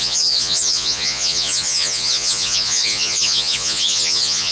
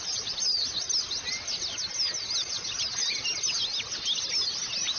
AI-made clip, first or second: first